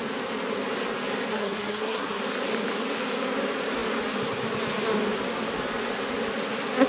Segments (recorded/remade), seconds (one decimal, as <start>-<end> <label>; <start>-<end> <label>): 0.0-1.3 recorded; 1.3-2.2 remade; 2.2-6.9 recorded